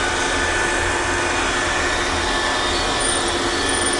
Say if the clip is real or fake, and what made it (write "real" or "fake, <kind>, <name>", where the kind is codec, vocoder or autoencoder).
real